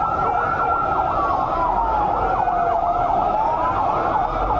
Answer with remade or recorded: recorded